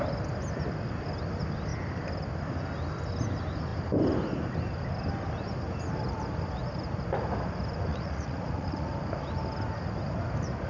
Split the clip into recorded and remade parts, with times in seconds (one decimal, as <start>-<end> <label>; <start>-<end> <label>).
0.0-7.9 recorded; 7.9-8.9 remade; 8.9-10.7 recorded